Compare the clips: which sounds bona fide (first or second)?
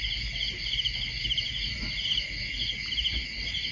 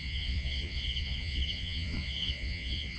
first